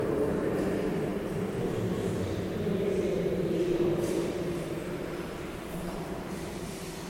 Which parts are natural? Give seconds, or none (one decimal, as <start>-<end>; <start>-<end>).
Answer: 0.0-2.7